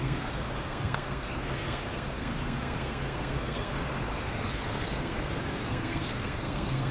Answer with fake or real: fake